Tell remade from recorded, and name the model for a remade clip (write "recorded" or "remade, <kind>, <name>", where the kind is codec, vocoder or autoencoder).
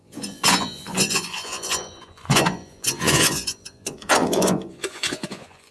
remade, vocoder, Vocos